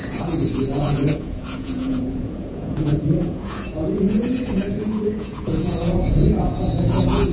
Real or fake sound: fake